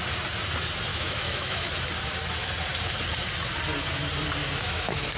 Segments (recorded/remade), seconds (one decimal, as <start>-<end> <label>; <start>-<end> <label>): 0.0-0.9 recorded; 0.9-1.7 remade; 1.7-4.4 recorded; 4.4-5.2 remade